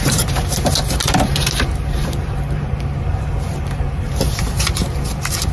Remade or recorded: remade